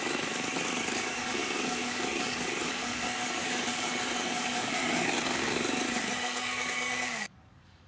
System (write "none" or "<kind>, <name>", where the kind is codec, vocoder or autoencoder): codec, DAC